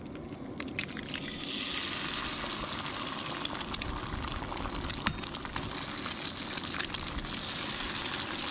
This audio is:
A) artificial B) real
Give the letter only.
B